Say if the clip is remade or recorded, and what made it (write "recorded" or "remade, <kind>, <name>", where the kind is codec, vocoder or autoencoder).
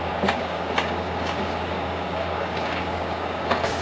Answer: remade, codec, DAC